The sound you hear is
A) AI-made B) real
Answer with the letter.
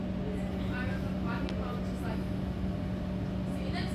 B